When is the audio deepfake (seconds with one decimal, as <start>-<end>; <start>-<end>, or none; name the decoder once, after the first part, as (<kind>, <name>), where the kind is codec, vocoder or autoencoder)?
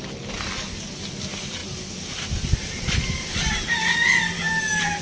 none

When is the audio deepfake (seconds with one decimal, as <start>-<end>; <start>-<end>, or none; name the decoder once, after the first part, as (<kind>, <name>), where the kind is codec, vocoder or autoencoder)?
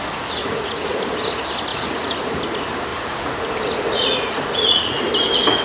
0.4-1.0 (vocoder, Vocos); 1.7-2.4; 2.9-3.5; 3.9-5.0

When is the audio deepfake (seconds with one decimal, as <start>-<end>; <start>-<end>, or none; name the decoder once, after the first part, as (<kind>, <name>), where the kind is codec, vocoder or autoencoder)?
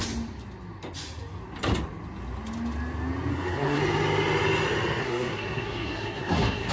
3.3-3.8 (codec, SNAC); 5.0-6.7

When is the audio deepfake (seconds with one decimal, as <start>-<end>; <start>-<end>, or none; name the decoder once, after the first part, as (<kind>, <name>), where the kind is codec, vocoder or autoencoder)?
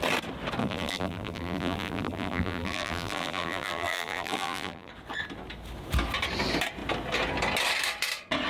0.6-4.9 (vocoder, BigVGAN v2)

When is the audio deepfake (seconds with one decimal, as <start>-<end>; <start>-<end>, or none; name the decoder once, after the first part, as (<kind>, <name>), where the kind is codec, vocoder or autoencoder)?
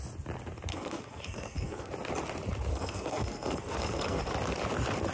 0.7-1.9 (codec, SNAC); 2.7-4.2